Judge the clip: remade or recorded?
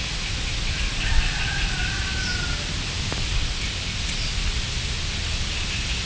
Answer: recorded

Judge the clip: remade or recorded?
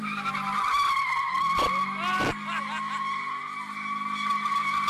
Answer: recorded